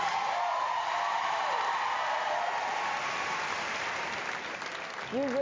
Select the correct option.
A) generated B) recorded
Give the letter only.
B